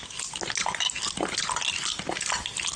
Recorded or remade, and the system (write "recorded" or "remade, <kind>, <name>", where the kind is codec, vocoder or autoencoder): recorded